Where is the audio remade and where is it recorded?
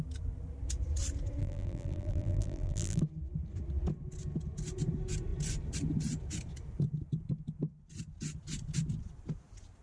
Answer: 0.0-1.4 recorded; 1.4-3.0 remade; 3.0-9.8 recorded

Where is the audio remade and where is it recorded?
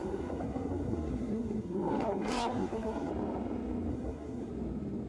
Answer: 0.0-3.1 remade; 3.1-3.9 recorded; 3.9-4.5 remade; 4.5-5.1 recorded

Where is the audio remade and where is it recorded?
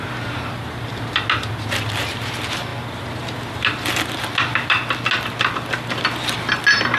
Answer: 0.0-7.0 recorded